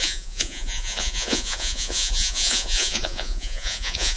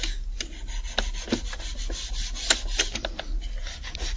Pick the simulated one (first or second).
first